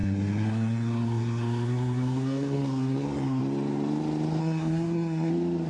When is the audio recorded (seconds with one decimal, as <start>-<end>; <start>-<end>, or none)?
3.4-4.4; 5.3-5.7